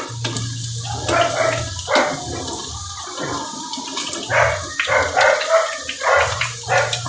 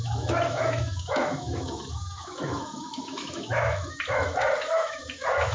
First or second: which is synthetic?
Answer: second